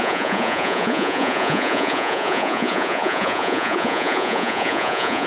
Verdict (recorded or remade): remade